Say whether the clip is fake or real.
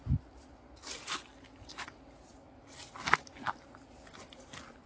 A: real